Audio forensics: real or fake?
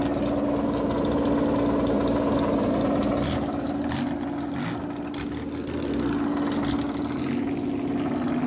real